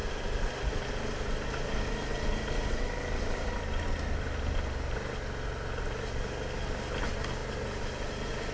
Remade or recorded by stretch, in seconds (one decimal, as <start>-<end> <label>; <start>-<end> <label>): 0.0-8.5 recorded